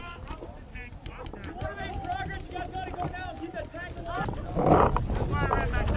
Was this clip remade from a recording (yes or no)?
no